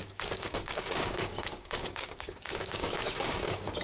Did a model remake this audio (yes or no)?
yes